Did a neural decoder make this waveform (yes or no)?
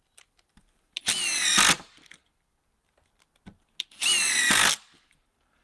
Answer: no